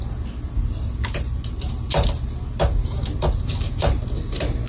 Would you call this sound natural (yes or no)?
yes